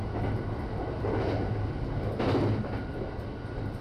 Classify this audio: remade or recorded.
recorded